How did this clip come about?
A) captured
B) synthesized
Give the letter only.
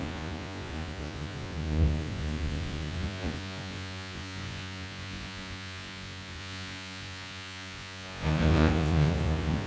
B